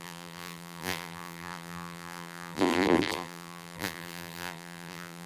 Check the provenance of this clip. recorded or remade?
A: remade